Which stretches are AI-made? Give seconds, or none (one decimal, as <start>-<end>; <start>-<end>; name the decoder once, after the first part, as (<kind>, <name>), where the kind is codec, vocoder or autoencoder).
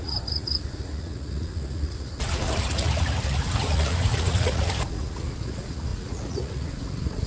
0.0-7.3 (vocoder, Vocos)